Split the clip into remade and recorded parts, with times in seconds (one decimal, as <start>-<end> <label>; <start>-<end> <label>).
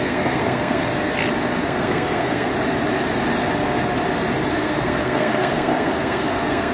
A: 0.0-0.9 remade; 0.9-1.6 recorded; 1.6-2.5 remade; 2.5-4.5 recorded; 4.5-6.7 remade